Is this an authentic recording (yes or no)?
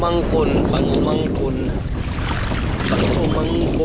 yes